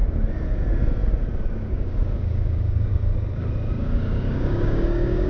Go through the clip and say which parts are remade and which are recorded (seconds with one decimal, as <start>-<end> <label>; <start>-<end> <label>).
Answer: 0.0-1.5 recorded; 1.5-3.1 remade; 3.1-3.8 recorded; 3.8-5.3 remade